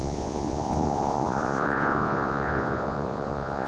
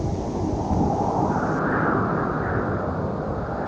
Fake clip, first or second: first